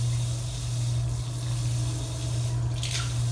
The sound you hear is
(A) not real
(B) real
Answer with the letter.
B